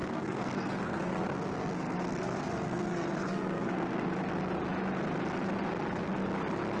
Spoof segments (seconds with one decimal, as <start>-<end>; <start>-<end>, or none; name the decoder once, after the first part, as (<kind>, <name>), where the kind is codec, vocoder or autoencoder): 0.0-4.1 (codec, SNAC)